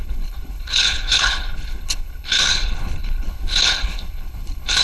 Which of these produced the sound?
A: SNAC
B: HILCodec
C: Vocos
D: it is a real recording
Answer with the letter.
B